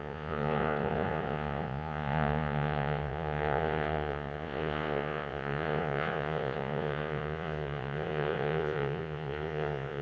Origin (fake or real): fake